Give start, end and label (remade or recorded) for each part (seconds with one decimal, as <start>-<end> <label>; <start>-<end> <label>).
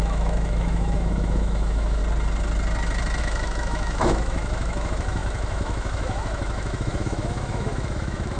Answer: 0.0-2.0 remade; 2.0-3.2 recorded; 3.2-8.4 remade